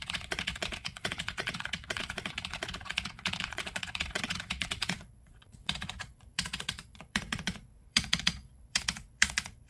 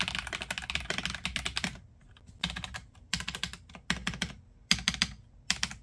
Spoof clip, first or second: first